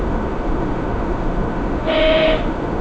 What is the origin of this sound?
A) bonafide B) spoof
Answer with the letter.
B